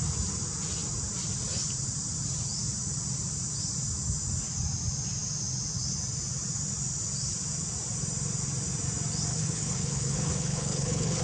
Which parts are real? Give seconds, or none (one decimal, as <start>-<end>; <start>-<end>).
0.0-9.3

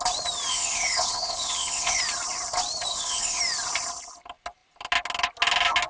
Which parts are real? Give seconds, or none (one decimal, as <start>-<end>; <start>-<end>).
0.0-0.5; 2.0-2.9; 3.4-5.9

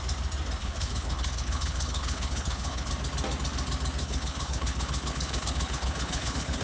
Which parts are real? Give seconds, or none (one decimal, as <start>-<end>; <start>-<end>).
0.0-0.6; 2.9-4.0